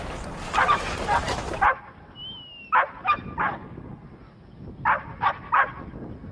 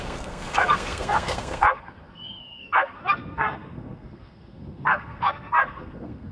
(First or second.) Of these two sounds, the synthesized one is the second